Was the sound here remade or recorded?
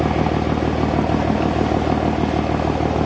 recorded